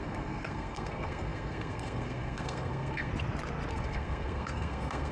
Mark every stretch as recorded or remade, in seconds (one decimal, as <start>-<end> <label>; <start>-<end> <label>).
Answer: 0.0-3.1 remade; 3.1-3.7 recorded; 3.7-5.1 remade